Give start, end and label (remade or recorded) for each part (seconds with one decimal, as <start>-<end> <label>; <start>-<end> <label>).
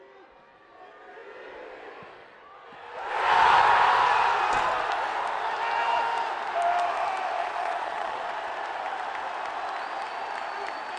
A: 0.0-7.4 recorded; 7.4-8.3 remade; 8.3-11.0 recorded